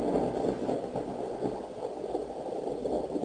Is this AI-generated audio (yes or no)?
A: no